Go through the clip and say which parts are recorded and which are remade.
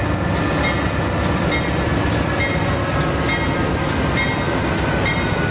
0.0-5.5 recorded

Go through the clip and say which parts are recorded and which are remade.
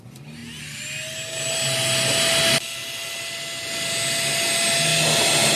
0.0-5.6 recorded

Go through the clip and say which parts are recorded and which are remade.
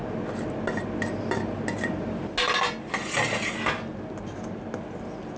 0.0-5.4 recorded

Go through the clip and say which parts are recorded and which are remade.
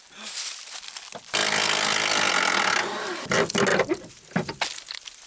0.0-5.3 recorded